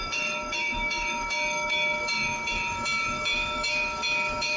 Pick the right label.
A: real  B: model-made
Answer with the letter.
B